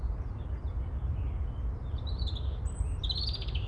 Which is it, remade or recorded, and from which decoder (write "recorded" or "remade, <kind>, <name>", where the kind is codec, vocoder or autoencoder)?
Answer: recorded